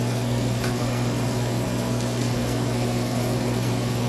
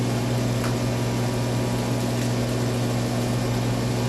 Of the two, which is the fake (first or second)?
first